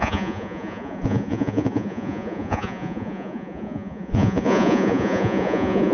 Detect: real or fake fake